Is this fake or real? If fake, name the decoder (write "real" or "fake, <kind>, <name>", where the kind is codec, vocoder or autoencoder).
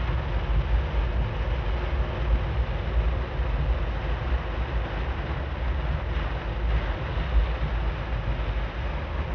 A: real